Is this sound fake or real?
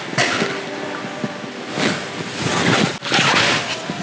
real